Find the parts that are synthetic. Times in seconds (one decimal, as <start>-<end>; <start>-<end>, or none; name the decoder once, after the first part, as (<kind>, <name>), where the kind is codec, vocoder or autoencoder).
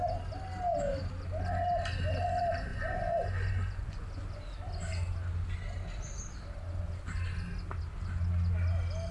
2.7-4.4 (vocoder, Vocos)